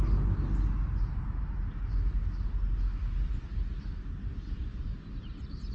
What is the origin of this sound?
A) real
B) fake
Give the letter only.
A